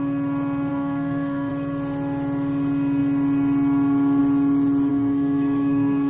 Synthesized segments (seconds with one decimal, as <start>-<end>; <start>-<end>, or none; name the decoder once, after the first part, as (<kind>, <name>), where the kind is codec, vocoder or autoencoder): 0.7-1.5 (codec, SNAC); 4.9-6.1